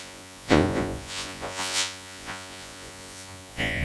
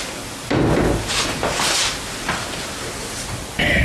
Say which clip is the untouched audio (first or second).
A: second